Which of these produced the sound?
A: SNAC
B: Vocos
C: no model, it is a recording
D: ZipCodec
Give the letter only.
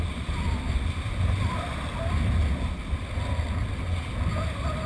C